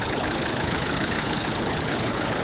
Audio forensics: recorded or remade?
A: remade